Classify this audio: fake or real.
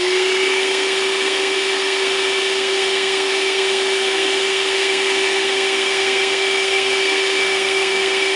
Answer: fake